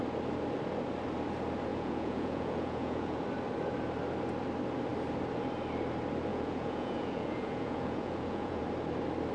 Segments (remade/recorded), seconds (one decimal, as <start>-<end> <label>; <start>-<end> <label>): 0.0-1.7 recorded; 1.7-3.2 remade; 3.2-6.3 recorded; 6.3-8.6 remade; 8.6-9.3 recorded